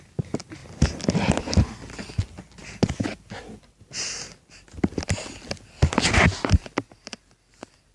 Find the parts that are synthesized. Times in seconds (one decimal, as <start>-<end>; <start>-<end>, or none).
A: none